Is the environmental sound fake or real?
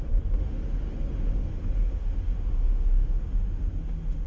fake